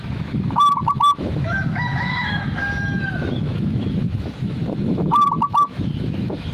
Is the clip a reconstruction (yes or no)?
yes